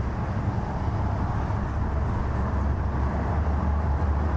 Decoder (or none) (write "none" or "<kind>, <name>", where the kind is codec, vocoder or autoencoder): none